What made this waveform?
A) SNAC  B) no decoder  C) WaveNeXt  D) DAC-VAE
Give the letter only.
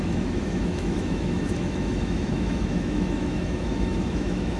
D